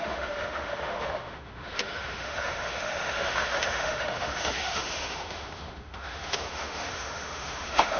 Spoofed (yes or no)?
yes